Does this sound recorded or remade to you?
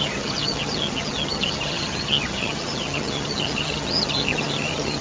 remade